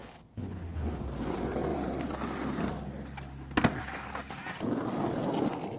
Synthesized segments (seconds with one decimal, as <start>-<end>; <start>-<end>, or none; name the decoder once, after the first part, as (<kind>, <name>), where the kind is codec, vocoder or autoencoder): 0.0-1.0 (codec, HILCodec)